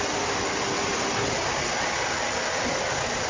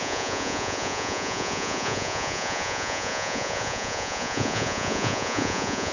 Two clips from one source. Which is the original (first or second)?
first